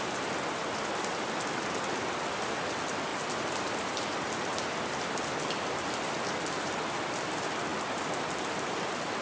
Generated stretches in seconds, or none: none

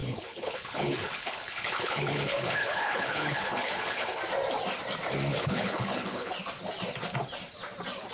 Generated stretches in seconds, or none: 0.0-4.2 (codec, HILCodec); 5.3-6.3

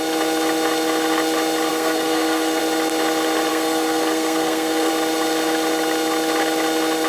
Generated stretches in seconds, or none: 1.7-2.6 (codec, SNAC); 3.5-4.9

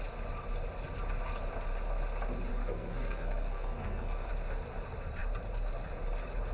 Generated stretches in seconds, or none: 2.5-4.3 (codec, SNAC)

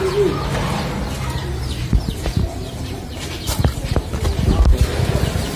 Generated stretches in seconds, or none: 1.4-4.8 (vocoder, BigVGAN v2)

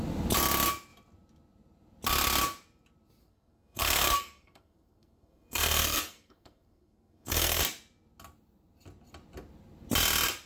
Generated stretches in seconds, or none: 3.2-7.6 (codec, SNAC)

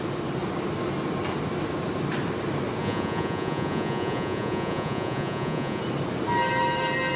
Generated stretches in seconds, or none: 2.8-5.8 (vocoder, Vocos)